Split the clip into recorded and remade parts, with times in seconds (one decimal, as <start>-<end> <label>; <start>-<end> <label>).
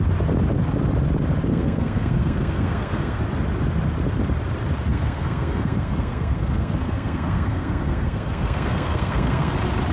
0.0-1.5 recorded; 1.5-3.2 remade; 3.2-4.9 recorded; 4.9-9.5 remade; 9.5-9.9 recorded